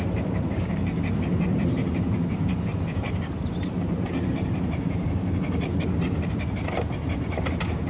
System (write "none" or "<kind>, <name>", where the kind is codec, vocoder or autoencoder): vocoder, BigVGAN v2